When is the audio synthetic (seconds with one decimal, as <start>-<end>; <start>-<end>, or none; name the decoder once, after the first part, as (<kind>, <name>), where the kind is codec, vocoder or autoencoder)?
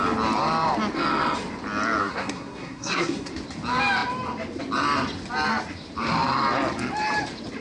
2.0-3.3 (codec, SNAC)